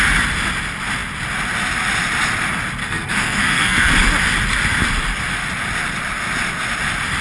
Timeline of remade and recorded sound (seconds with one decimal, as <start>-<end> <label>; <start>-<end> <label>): 0.0-2.8 recorded; 2.8-3.9 remade; 3.9-7.2 recorded